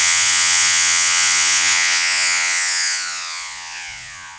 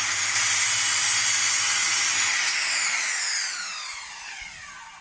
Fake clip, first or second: first